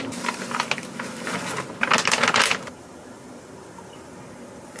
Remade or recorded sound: recorded